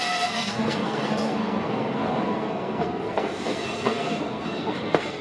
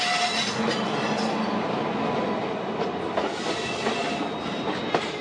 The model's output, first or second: first